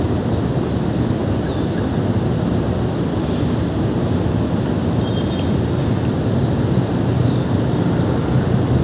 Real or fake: real